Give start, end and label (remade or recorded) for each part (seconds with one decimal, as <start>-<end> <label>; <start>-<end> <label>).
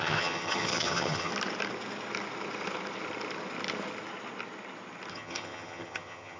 0.0-1.3 remade; 1.3-5.1 recorded; 5.1-6.4 remade